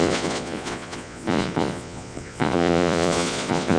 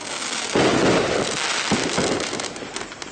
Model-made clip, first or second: first